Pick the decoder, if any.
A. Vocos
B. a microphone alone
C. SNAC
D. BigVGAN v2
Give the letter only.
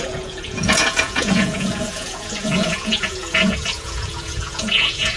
A